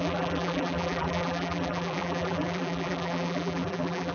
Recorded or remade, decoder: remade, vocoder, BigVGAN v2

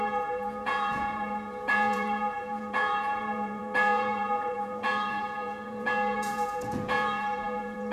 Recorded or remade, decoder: remade, vocoder, Vocos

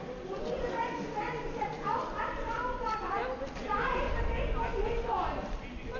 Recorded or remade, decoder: recorded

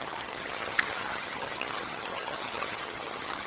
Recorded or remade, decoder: remade, vocoder, HiFi-GAN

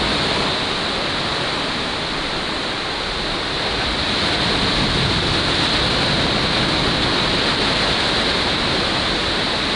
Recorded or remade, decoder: recorded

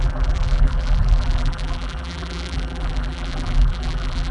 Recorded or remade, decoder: remade, vocoder, BigVGAN v2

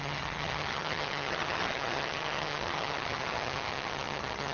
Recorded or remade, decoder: remade, vocoder, HiFi-GAN